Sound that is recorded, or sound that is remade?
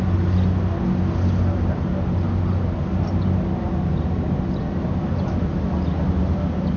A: recorded